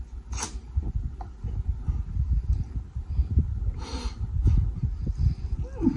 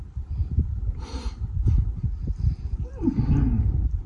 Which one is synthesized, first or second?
second